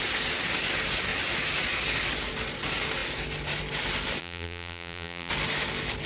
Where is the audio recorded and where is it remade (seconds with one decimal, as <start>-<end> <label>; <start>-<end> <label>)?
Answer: 0.0-4.2 recorded; 4.2-5.3 remade; 5.3-6.1 recorded